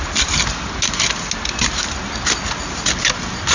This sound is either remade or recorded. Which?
recorded